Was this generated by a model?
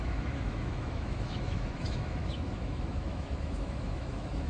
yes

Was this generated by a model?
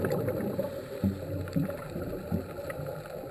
yes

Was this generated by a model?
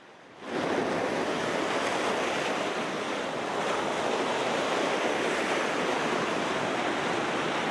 no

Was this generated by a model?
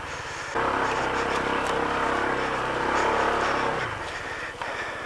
no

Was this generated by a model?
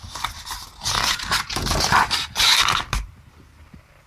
no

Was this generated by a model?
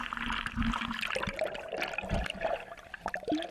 no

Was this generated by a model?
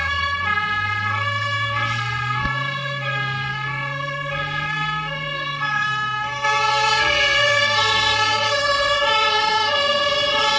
yes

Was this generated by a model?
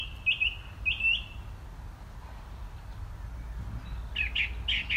no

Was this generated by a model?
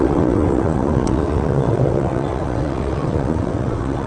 yes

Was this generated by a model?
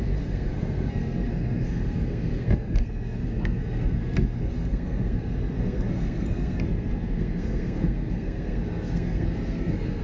yes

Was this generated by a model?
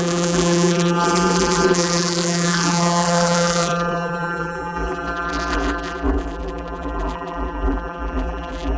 yes